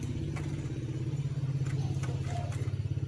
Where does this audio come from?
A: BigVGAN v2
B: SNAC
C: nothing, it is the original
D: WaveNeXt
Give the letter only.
C